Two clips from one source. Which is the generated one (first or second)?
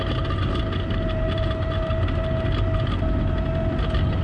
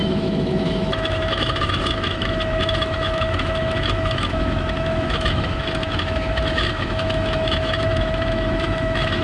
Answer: second